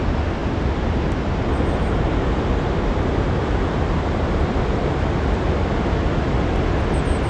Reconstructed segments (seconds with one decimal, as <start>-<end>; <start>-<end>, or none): none